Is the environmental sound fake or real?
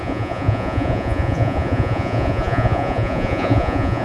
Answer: fake